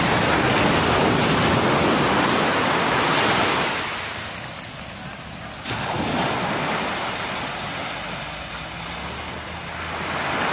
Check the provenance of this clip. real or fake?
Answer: real